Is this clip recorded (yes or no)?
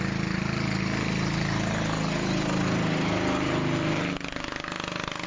yes